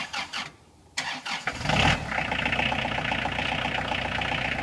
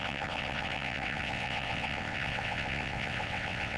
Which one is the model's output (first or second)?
second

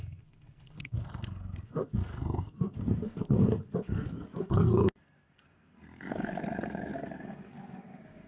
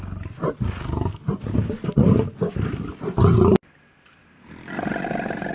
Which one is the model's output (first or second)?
first